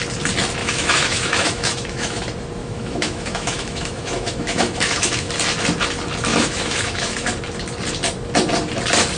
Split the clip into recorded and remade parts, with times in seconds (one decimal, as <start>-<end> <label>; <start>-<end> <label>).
0.0-0.6 recorded; 0.6-2.2 remade; 2.2-2.6 recorded; 2.6-5.3 remade; 5.3-6.3 recorded; 6.3-7.3 remade; 7.3-9.2 recorded